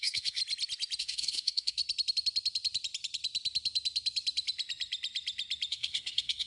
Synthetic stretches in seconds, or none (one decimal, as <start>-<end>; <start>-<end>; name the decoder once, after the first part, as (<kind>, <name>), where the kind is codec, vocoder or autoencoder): 0.0-0.4 (codec, SNAC); 1.0-1.8; 5.7-6.5